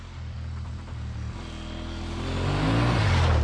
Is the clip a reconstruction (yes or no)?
no